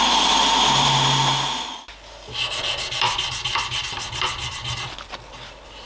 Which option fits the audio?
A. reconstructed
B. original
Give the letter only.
B